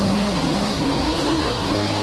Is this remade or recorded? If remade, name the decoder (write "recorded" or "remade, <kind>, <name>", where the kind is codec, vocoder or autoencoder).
remade, codec, SNAC